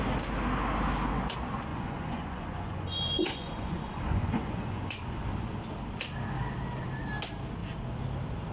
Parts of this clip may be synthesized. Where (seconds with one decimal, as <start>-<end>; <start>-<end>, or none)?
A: 1.7-5.3